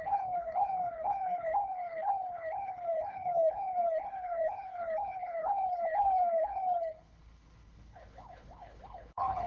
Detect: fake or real fake